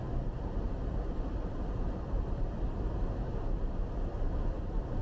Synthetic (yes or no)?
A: yes